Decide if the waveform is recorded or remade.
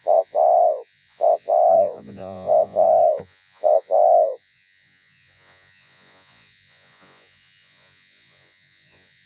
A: remade